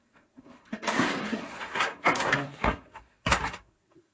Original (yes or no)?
no